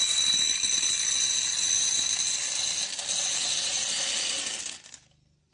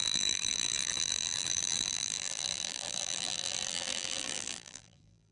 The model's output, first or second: second